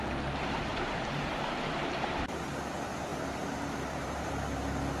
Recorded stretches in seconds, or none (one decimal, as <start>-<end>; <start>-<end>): 0.0-0.7; 2.4-3.1; 4.3-5.0

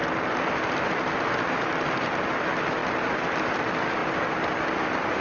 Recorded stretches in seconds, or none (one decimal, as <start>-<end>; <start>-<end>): 0.0-5.2